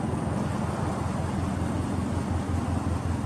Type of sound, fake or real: real